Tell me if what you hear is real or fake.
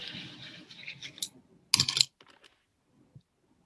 real